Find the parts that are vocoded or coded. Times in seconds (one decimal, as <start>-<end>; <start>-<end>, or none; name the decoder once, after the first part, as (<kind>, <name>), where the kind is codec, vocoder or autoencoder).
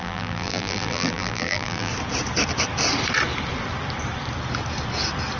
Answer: 0.0-1.9 (vocoder, BigVGAN v2)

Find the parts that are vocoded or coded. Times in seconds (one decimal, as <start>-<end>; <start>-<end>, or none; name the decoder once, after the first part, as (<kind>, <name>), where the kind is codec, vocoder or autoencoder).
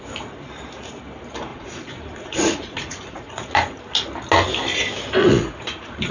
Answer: 1.5-3.8 (vocoder, Vocos); 5.2-6.1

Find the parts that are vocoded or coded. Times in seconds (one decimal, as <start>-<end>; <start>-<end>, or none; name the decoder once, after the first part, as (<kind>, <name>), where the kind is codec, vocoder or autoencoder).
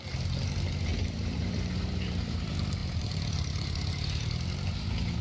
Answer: 0.9-1.5 (vocoder, BigVGAN v2); 2.8-3.7